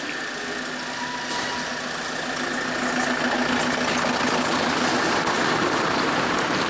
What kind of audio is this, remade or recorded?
recorded